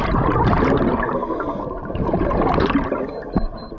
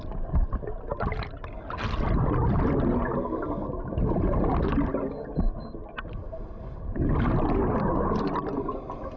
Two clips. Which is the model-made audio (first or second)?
first